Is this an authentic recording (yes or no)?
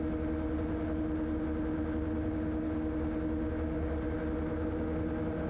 yes